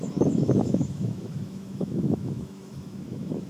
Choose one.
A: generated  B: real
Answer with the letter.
A